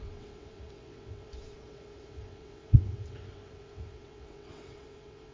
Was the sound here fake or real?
fake